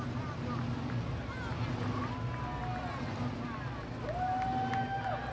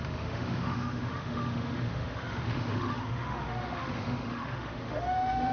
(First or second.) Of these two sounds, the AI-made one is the second